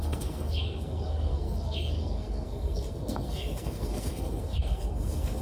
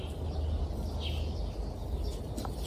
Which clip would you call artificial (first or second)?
first